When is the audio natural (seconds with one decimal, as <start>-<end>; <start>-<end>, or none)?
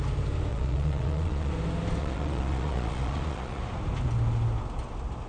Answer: 0.0-0.5; 1.5-2.0; 3.6-5.3